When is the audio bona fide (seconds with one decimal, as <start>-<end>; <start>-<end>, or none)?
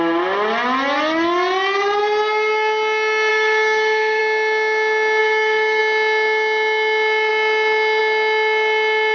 0.0-3.3; 4.2-5.2; 5.8-9.1